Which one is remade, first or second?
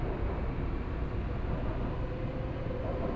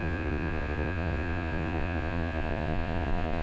second